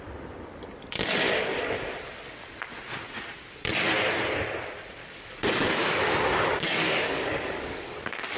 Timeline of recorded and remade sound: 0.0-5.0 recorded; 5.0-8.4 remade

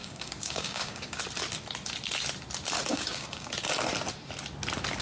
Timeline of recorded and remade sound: 0.0-1.2 remade; 1.2-2.9 recorded; 2.9-3.5 remade; 3.5-5.0 recorded